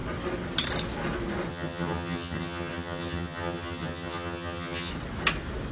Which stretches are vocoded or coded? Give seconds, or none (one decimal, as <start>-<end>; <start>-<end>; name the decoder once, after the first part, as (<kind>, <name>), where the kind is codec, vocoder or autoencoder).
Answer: 1.5-4.9 (vocoder, HiFi-GAN)